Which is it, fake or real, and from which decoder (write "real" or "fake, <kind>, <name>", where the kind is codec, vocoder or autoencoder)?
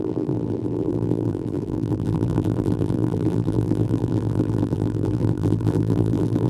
fake, vocoder, BigVGAN v2